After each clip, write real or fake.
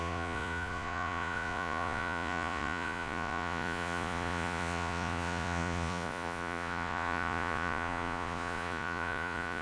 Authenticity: fake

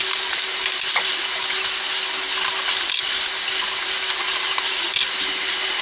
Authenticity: real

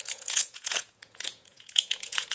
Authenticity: fake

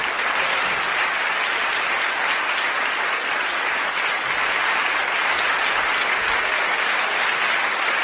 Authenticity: real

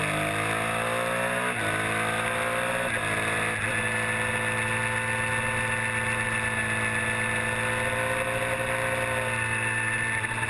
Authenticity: real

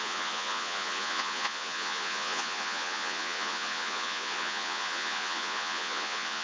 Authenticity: fake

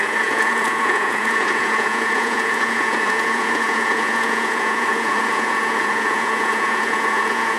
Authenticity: fake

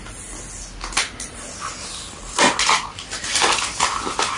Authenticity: real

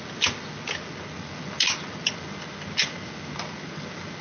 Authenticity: real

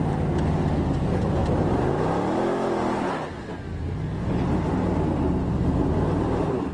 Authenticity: real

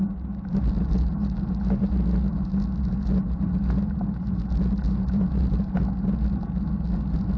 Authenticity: real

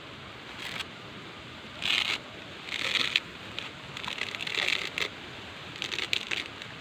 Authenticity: real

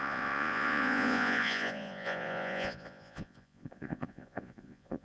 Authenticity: fake